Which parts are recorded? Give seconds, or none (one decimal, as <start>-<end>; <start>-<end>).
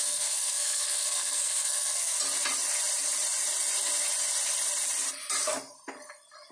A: 2.2-6.5